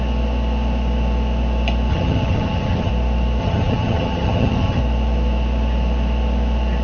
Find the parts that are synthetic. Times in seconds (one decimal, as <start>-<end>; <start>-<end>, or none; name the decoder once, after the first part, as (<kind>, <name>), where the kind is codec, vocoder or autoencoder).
1.9-2.9 (vocoder, HiFi-GAN); 3.4-4.8